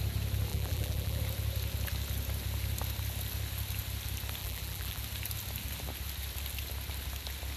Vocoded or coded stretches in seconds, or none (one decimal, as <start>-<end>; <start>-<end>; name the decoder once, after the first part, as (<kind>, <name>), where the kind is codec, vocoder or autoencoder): 0.5-1.2 (vocoder, BigVGAN v2); 4.4-5.0